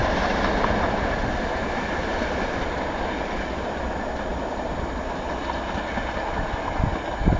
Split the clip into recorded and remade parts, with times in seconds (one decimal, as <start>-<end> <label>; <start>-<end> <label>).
0.0-7.4 recorded